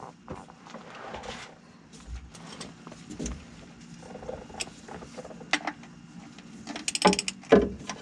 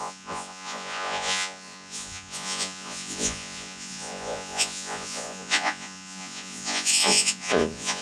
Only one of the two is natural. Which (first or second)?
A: first